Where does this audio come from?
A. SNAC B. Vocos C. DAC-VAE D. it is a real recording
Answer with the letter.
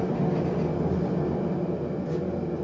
D